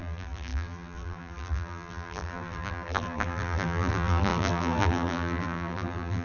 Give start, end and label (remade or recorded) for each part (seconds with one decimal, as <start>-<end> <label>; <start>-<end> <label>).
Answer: 0.0-6.2 remade